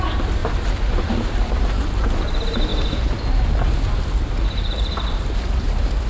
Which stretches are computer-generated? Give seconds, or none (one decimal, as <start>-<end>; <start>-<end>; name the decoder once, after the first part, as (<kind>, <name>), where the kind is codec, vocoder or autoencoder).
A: 0.4-2.2 (vocoder, BigVGAN v2)